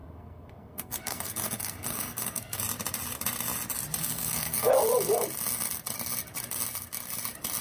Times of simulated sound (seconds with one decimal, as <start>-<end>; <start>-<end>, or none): 0.0-2.6; 4.0-4.7